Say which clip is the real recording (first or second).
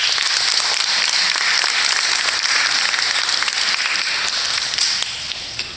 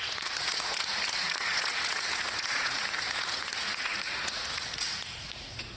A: first